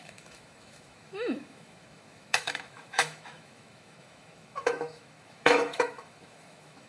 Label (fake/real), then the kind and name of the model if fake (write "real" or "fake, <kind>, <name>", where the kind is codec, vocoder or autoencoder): fake, autoencoder, DAC-VAE